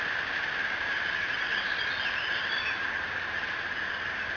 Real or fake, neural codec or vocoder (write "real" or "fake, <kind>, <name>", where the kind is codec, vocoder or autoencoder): real